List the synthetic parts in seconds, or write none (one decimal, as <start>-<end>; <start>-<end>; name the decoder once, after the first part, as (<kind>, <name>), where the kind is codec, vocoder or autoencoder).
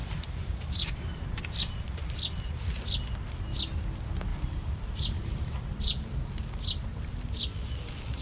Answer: 0.0-1.4 (vocoder, BigVGAN v2); 4.3-6.2